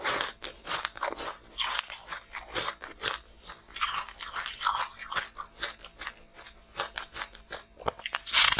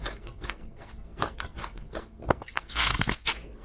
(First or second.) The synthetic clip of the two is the second